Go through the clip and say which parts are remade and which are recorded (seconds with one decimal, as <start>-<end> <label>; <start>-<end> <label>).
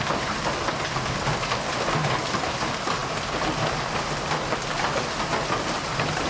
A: 0.0-6.3 recorded